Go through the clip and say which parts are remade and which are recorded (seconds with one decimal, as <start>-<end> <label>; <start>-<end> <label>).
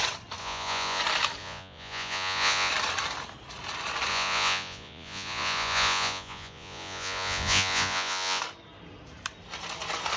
0.0-0.4 recorded; 0.4-1.0 remade; 1.0-1.4 recorded; 1.4-2.7 remade; 2.7-4.1 recorded; 4.1-8.4 remade; 8.4-10.2 recorded